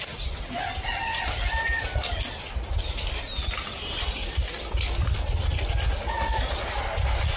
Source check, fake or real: real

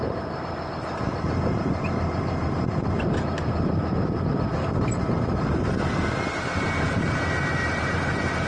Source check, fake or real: fake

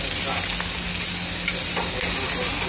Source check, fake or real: real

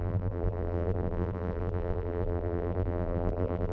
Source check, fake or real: fake